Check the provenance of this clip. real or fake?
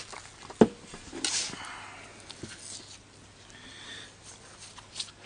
real